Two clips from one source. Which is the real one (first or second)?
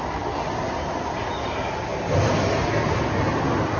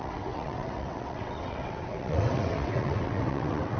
first